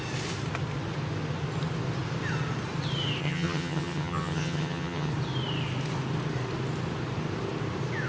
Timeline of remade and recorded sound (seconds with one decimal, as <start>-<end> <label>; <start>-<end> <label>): 0.0-3.2 recorded; 3.2-5.1 remade; 5.1-8.1 recorded